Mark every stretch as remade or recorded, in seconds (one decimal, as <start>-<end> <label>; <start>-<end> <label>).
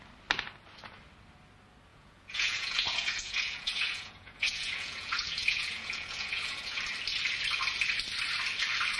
0.0-1.9 recorded; 1.9-6.8 remade; 6.8-9.0 recorded